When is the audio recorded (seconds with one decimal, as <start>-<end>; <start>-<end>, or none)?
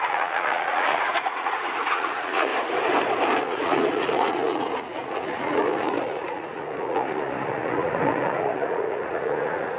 2.5-3.4